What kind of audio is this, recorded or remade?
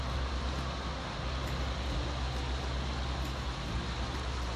recorded